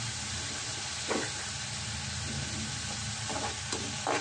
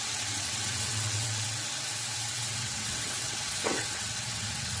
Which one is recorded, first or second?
first